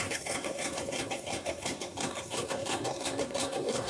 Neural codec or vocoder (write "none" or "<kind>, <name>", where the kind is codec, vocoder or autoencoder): codec, SNAC